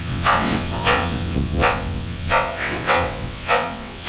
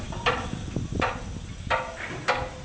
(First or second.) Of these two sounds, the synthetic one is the first